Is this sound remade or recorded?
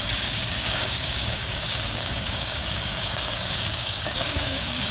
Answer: remade